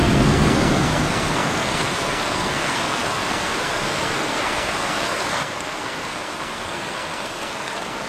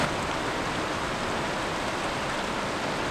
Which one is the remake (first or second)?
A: first